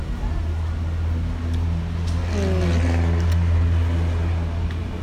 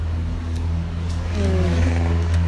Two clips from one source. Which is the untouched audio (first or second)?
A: first